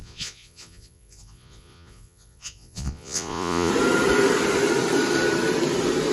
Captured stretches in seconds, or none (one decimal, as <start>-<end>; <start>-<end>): 3.7-6.1